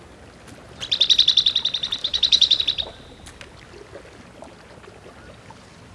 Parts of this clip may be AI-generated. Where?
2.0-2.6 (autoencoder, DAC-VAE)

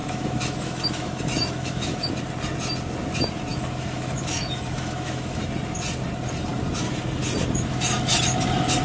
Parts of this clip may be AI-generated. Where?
0.0-2.1 (autoencoder, DAC-VAE); 3.5-5.4

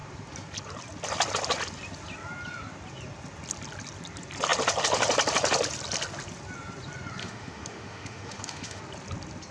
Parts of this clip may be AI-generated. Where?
7.2-8.8 (autoencoder, DAC-VAE)